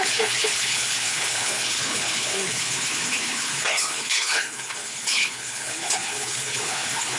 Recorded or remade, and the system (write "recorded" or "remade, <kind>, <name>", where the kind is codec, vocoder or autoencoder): remade, codec, HILCodec